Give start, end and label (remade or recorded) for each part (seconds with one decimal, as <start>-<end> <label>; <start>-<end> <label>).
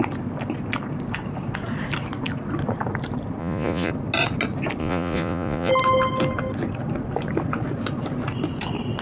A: 0.0-3.4 recorded; 3.4-3.9 remade; 3.9-4.8 recorded; 4.8-5.7 remade; 5.7-9.0 recorded